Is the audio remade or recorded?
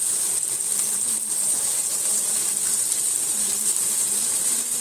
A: remade